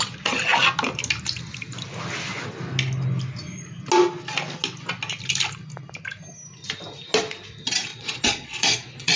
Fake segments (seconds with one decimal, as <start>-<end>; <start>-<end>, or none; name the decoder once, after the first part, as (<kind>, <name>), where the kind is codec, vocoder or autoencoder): 7.9-9.2 (vocoder, Vocos)